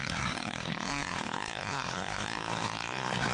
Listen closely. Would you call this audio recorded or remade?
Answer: remade